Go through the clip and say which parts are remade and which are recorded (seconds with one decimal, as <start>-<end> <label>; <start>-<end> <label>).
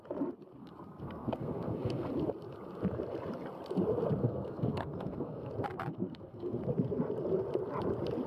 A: 0.0-0.6 recorded; 0.6-2.1 remade; 2.1-4.2 recorded; 4.2-5.5 remade; 5.5-5.9 recorded; 5.9-6.6 remade; 6.6-8.3 recorded